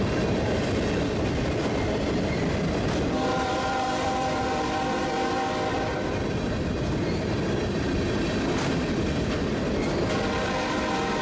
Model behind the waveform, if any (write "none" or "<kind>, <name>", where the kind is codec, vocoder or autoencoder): vocoder, BigVGAN v2